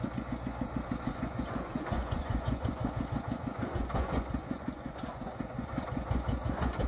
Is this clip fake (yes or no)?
yes